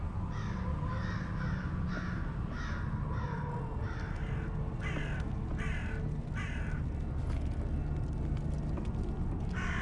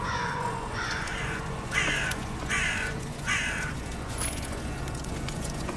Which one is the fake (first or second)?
second